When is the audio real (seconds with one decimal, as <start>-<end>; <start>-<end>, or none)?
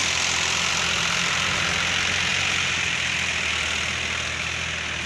0.0-5.1